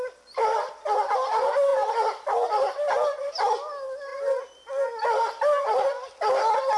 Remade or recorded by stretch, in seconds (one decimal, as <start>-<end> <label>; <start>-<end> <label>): 0.0-6.8 recorded